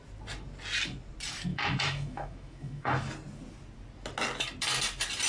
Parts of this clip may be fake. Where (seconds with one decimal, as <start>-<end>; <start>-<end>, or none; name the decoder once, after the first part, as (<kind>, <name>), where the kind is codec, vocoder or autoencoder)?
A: 1.5-3.1 (autoencoder, DAC-VAE)